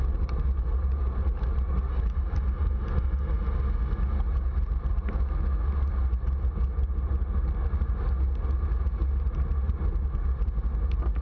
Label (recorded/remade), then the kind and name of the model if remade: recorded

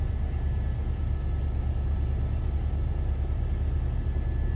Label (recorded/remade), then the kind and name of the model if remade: recorded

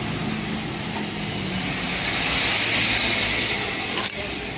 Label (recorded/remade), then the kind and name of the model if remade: recorded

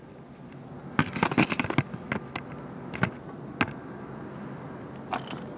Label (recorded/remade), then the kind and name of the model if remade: recorded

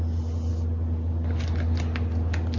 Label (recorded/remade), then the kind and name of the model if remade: recorded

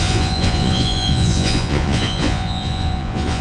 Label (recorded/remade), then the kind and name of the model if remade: remade, vocoder, Vocos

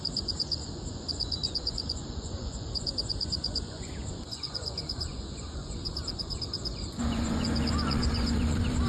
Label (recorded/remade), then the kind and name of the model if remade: remade, vocoder, Vocos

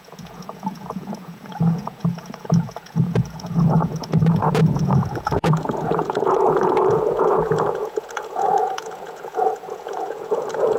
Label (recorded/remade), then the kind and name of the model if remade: remade, vocoder, Vocos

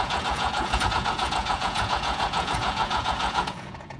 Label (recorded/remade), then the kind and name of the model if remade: remade, vocoder, Vocos